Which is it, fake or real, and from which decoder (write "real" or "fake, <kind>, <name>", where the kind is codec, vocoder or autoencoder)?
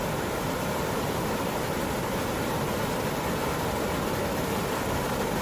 real